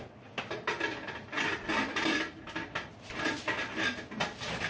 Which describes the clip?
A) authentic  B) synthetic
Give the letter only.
A